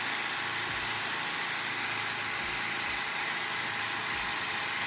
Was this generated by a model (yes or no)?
no